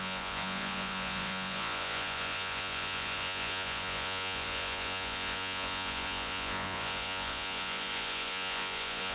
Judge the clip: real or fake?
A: fake